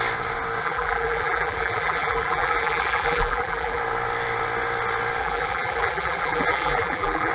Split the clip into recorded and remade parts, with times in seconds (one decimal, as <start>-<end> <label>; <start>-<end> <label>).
0.0-0.6 recorded; 0.6-3.8 remade; 3.8-5.2 recorded; 5.2-7.3 remade